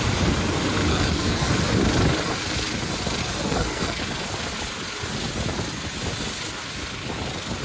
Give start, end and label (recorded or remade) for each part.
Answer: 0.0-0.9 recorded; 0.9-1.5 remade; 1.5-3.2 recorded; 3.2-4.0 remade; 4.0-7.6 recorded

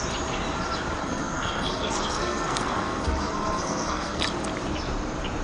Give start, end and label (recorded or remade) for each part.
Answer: 0.0-1.0 recorded; 1.0-4.2 remade; 4.2-5.4 recorded

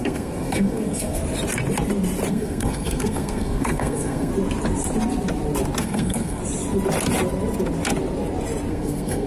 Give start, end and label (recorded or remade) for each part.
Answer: 0.0-1.2 remade; 1.2-2.3 recorded; 2.3-4.3 remade; 4.3-5.8 recorded; 5.8-6.4 remade; 6.4-8.7 recorded; 8.7-9.3 remade

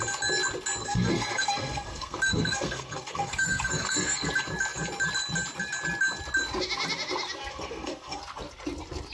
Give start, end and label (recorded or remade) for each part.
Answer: 0.0-0.8 recorded; 0.8-4.3 remade; 4.3-7.5 recorded; 7.5-8.2 remade; 8.2-9.1 recorded

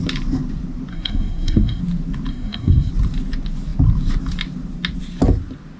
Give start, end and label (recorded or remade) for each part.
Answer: 0.0-0.9 recorded; 0.9-1.8 remade; 1.8-2.3 recorded; 2.3-2.9 remade; 2.9-5.8 recorded